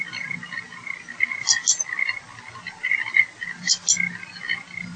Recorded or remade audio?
recorded